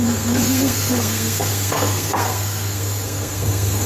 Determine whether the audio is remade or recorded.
remade